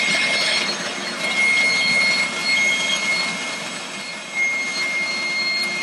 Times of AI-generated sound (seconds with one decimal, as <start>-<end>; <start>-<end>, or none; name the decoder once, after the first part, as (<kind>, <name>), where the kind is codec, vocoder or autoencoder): none